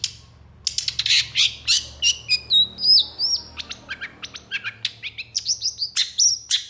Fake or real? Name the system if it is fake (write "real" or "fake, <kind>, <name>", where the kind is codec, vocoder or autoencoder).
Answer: real